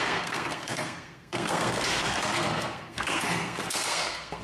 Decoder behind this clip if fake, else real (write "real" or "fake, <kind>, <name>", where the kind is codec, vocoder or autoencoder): fake, codec, SNAC